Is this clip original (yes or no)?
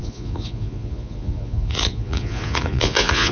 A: no